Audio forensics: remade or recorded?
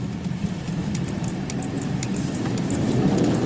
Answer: remade